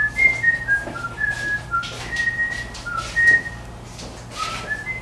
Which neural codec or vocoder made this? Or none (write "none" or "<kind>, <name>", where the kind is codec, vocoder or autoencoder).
none